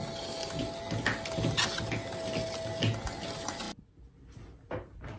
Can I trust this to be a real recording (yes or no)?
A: yes